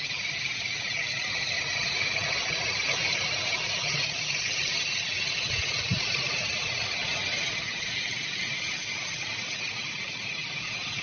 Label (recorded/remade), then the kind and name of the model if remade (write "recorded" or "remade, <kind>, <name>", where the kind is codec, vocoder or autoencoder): recorded